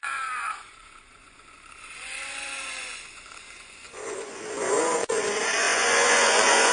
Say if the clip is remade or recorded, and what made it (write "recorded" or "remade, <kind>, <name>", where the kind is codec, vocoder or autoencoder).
remade, vocoder, Vocos